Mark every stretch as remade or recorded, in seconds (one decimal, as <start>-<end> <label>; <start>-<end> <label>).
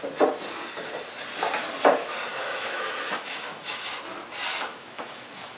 0.0-2.3 recorded; 2.3-3.9 remade; 3.9-4.7 recorded; 4.7-5.6 remade